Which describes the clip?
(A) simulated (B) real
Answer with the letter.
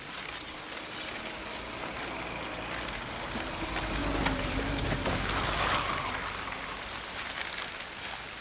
B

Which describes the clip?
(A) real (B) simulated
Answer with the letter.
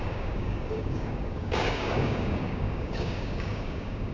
B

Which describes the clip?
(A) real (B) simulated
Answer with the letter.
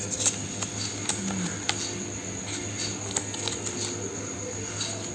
A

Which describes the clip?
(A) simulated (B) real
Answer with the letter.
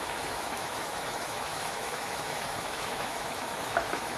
A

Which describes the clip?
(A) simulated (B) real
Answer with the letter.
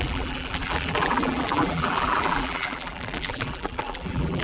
A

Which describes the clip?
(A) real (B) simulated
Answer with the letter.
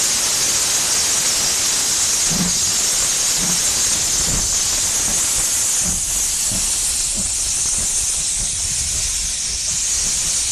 A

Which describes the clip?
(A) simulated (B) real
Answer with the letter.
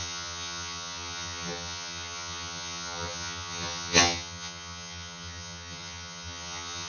A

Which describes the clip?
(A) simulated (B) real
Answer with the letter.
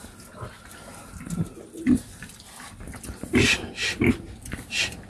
B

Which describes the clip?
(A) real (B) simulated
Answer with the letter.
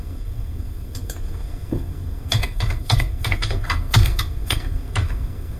B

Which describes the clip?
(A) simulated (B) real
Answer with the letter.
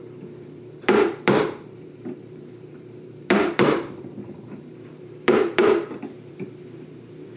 A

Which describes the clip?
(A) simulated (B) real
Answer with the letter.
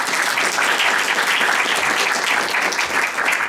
B